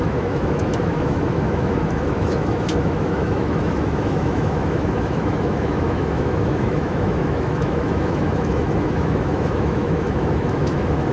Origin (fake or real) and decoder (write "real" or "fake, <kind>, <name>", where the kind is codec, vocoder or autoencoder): fake, autoencoder, DAC-VAE